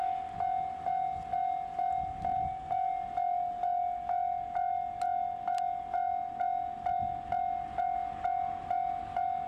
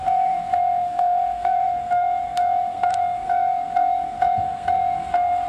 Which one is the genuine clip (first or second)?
first